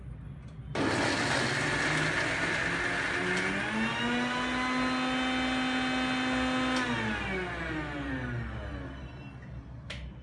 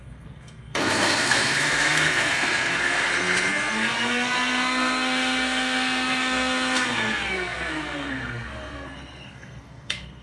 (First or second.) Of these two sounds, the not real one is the second